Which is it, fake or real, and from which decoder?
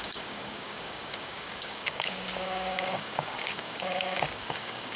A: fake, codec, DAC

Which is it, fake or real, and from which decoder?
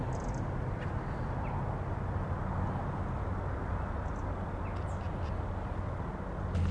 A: real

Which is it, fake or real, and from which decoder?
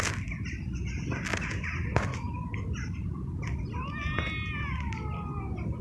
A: real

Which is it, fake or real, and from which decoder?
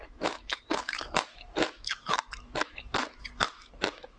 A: fake, autoencoder, DAC-VAE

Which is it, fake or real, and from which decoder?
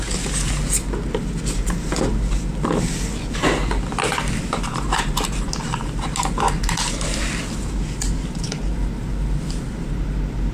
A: real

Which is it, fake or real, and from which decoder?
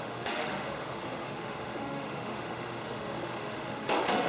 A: fake, autoencoder, DAC-VAE